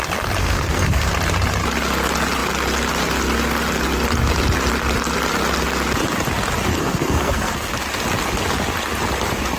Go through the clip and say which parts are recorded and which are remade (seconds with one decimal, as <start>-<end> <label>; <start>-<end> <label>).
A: 0.0-0.4 recorded; 0.4-1.1 remade; 1.1-6.7 recorded; 6.7-7.7 remade; 7.7-9.6 recorded